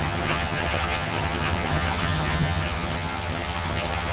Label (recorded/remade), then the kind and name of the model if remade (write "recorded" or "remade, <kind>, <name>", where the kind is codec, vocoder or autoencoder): remade, vocoder, HiFi-GAN